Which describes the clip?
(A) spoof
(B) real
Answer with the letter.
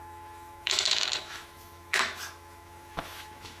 A